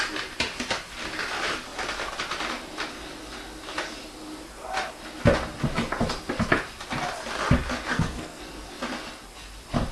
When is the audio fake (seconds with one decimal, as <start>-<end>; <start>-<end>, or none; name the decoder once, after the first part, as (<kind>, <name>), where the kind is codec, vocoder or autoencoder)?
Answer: 7.9-8.4 (codec, SNAC)